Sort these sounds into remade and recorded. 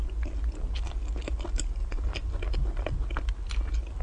recorded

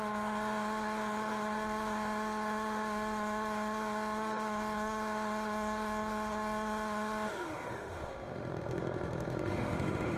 remade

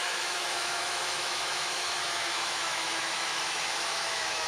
remade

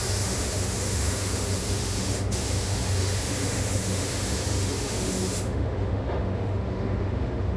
remade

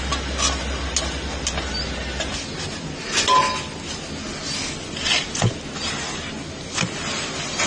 recorded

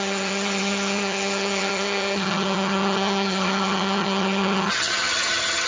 remade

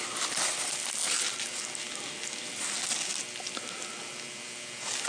recorded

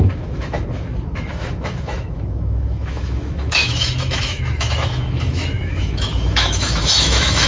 remade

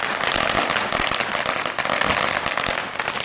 recorded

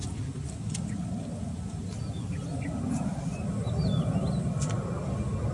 recorded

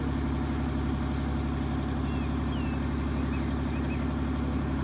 recorded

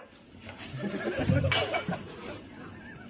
remade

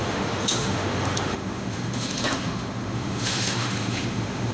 remade